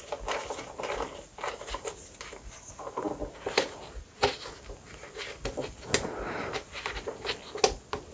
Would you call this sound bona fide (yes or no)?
yes